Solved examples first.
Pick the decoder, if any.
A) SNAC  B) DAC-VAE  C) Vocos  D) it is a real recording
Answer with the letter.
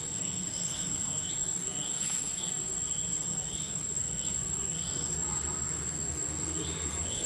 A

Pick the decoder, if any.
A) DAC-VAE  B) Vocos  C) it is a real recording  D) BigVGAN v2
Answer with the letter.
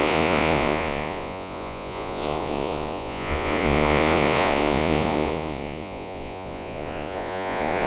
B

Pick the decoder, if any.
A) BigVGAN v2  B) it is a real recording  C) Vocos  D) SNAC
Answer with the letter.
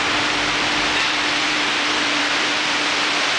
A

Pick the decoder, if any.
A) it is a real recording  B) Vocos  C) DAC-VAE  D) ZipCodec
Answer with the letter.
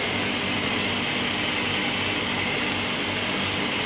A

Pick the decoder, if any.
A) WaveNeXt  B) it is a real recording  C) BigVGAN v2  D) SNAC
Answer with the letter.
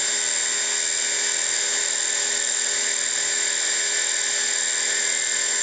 B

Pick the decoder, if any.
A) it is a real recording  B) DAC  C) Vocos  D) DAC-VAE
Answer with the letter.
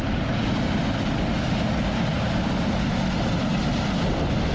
A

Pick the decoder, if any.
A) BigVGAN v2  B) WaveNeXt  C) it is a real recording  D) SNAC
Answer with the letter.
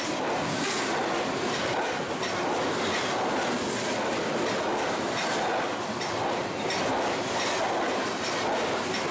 C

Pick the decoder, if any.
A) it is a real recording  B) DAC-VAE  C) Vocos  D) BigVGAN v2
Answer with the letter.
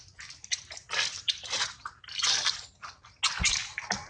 A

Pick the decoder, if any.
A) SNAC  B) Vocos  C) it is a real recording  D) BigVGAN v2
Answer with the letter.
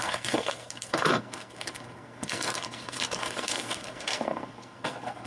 A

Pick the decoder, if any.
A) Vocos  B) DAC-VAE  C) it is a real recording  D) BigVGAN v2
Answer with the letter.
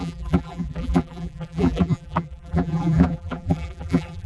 D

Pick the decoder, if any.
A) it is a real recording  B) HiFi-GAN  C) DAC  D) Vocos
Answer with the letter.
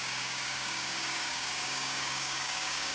C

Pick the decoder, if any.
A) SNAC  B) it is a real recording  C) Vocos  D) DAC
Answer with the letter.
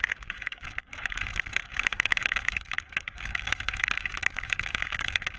D